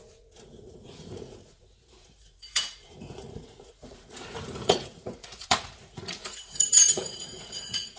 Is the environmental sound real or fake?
fake